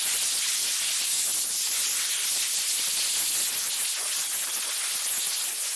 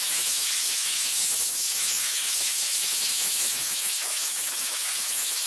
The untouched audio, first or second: first